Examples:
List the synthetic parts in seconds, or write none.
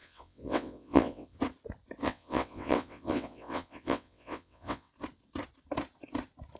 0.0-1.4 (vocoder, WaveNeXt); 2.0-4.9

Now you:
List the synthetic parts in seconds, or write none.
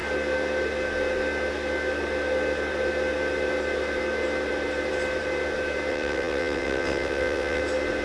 5.9-7.6 (vocoder, WaveNeXt)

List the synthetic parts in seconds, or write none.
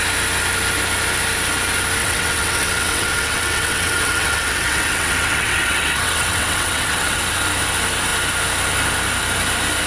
2.0-7.2 (vocoder, WaveNeXt)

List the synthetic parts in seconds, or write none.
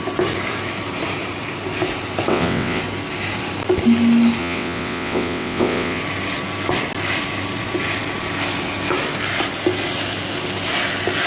2.3-2.8 (vocoder, WaveNeXt); 4.4-6.0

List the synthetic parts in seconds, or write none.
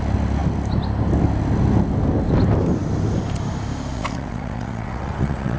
3.9-5.6 (vocoder, WaveNeXt)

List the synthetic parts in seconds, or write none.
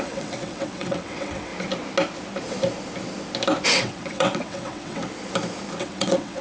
0.0-1.5 (vocoder, WaveNeXt); 3.7-5.0; 5.8-6.4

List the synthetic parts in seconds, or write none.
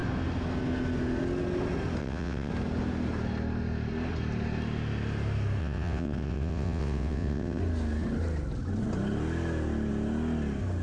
2.0-2.5 (vocoder, WaveNeXt); 5.6-7.6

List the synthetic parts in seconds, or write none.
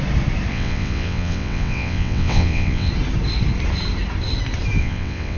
0.5-2.9 (vocoder, WaveNeXt); 4.8-5.4